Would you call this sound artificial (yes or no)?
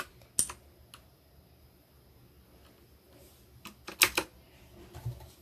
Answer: no